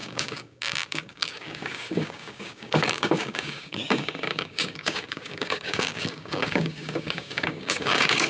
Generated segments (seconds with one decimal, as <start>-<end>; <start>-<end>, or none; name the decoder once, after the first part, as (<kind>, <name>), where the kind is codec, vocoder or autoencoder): 0.0-8.3 (codec, DAC)